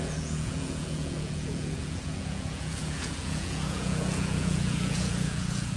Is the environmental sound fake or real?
fake